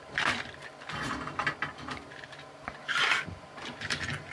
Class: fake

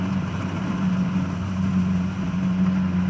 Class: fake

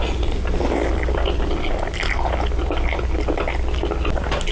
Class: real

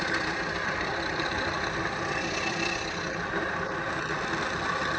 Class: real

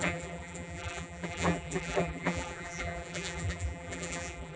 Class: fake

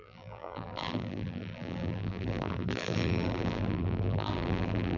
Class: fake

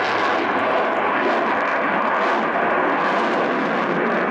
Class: real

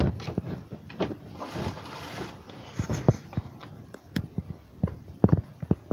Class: real